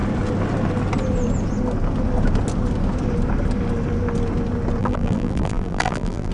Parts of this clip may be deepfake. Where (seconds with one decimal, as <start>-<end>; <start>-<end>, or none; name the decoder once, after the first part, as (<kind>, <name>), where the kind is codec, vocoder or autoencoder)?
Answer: 4.8-6.3 (vocoder, BigVGAN v2)